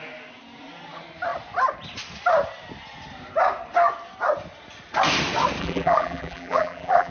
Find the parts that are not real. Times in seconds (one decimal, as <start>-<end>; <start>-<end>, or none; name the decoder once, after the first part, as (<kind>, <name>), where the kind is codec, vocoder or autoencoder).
5.6-7.1 (vocoder, BigVGAN v2)